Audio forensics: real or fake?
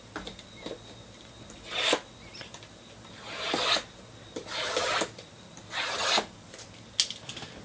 real